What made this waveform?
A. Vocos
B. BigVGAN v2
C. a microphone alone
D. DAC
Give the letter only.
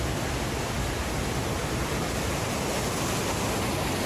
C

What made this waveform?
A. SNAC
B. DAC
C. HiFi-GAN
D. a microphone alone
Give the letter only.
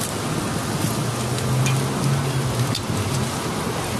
D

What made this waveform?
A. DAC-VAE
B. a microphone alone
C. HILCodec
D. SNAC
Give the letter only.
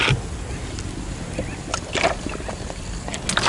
B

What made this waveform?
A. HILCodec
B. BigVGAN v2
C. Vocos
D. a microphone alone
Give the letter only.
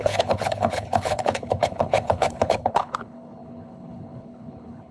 A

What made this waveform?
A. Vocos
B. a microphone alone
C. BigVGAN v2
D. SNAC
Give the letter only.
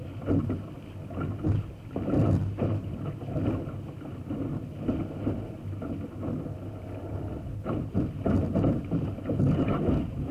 B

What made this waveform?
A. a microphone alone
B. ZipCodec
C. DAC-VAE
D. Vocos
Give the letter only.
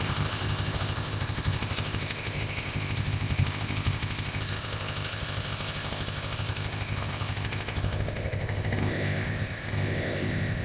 B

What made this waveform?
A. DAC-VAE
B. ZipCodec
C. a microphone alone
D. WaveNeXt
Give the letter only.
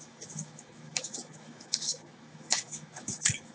A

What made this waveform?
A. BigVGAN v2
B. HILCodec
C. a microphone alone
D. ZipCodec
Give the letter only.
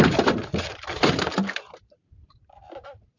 A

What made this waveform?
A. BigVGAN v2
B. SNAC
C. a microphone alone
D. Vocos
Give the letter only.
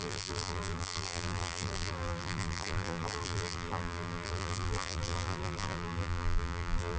A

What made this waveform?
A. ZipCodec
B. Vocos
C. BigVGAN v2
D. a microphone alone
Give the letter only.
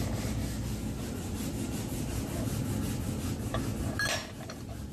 D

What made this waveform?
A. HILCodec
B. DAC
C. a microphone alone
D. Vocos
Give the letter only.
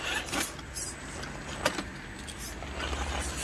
C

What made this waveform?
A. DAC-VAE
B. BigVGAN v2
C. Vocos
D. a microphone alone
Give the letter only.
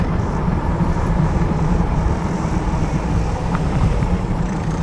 B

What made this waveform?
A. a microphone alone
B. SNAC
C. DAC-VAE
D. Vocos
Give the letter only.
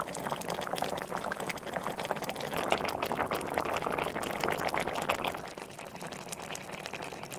A